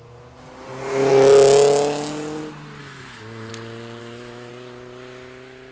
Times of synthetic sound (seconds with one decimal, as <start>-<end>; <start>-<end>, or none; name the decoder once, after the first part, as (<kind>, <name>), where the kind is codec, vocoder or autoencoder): 2.8-3.5 (autoencoder, DAC-VAE); 4.0-4.5